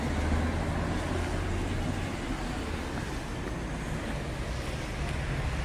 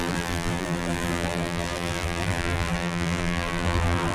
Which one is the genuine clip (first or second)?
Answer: first